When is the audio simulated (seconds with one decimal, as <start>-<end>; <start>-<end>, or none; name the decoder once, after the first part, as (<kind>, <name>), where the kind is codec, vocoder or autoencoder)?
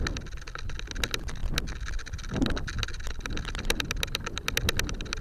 none